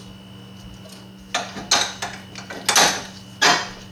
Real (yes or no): yes